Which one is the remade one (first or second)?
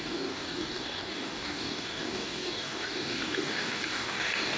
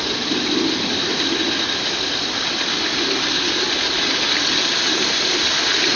first